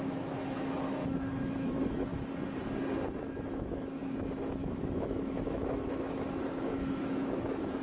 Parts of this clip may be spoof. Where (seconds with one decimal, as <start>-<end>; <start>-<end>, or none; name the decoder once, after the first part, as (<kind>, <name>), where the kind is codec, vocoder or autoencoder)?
0.0-2.1 (autoencoder, DAC-VAE); 3.2-7.8